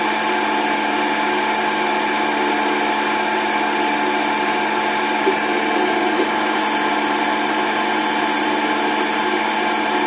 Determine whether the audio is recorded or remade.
recorded